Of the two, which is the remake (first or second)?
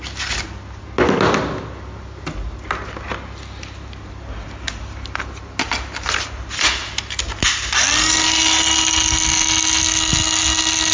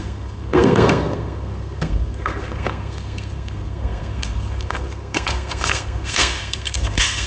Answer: second